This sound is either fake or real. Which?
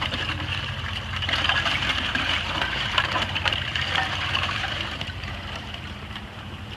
fake